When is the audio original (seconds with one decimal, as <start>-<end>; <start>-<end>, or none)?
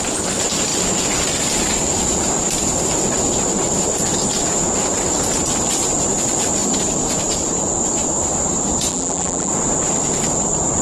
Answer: 0.0-8.9; 9.5-10.8